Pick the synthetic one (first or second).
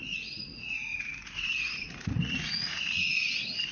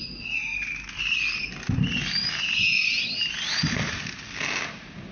first